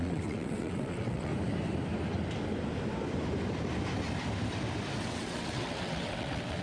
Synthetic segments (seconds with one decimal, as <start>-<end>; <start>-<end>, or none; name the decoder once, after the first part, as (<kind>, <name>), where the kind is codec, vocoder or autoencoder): 0.0-1.3 (vocoder, WaveNeXt); 5.0-6.6